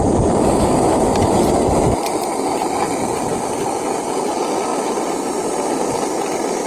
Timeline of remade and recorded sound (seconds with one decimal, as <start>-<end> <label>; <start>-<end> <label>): 0.0-6.7 recorded